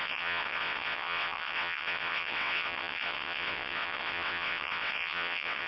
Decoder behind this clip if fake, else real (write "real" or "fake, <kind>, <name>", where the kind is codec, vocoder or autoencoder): fake, vocoder, WaveNeXt